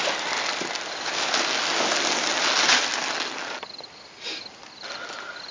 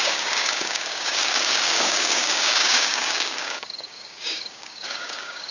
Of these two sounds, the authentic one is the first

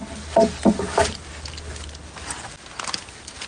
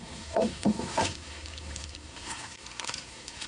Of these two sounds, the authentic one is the first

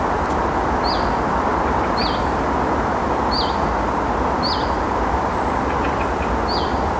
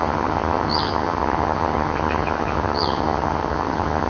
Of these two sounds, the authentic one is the first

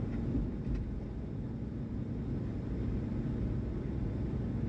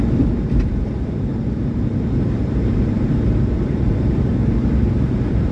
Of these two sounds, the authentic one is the first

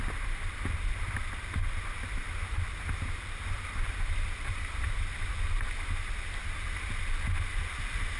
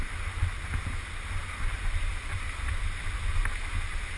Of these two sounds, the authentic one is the second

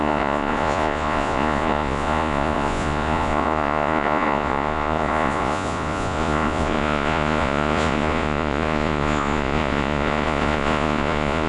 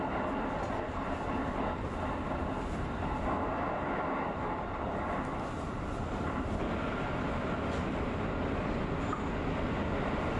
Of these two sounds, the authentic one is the second